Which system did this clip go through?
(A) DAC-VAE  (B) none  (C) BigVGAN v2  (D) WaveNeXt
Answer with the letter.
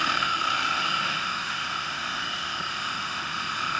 A